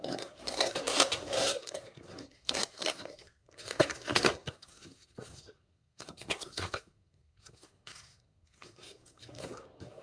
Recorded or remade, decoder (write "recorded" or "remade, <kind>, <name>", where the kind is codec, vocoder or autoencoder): remade, codec, SNAC